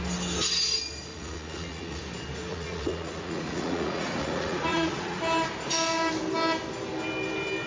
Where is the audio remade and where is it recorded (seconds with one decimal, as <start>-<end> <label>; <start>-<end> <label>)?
0.0-1.1 recorded; 1.1-2.0 remade; 2.0-2.5 recorded; 2.5-5.2 remade; 5.2-7.7 recorded